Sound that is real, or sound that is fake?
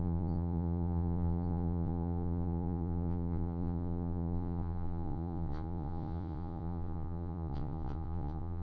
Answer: fake